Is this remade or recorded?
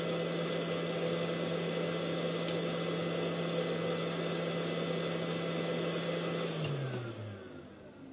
recorded